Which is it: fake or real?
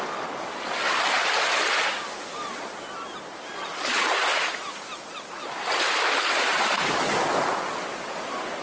real